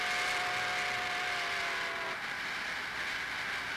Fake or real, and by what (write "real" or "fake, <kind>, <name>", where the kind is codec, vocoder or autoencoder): real